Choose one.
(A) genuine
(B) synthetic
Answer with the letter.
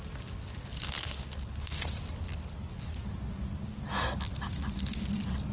A